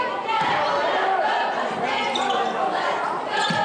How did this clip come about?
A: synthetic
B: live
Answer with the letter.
B